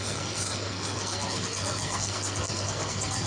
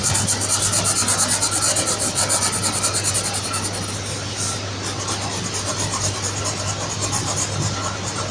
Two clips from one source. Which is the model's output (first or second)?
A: first